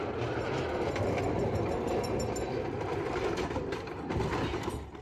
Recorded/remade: remade